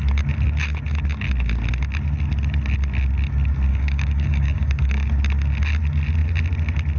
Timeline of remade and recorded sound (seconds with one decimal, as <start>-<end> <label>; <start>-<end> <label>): 0.0-3.7 recorded; 3.7-5.1 remade; 5.1-7.0 recorded